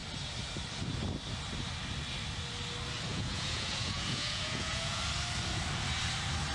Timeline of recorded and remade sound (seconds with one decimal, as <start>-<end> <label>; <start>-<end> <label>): 0.0-3.1 recorded; 3.1-5.0 remade; 5.0-6.5 recorded